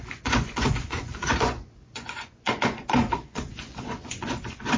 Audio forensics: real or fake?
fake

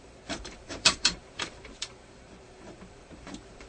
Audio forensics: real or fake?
fake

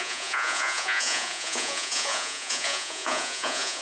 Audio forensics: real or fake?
fake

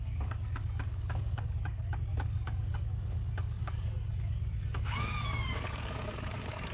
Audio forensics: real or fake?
fake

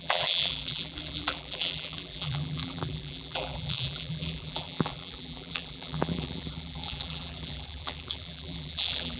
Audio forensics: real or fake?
fake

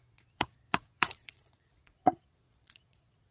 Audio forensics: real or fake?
fake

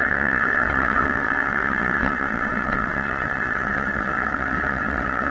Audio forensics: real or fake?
fake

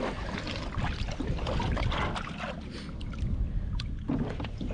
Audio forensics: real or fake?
real